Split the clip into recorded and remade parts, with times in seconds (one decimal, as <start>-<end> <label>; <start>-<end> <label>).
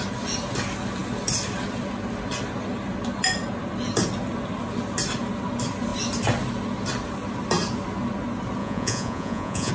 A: 0.0-8.6 recorded; 8.6-9.7 remade